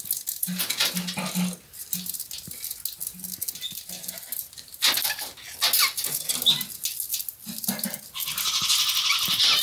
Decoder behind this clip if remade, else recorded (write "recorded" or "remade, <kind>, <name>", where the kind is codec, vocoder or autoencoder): recorded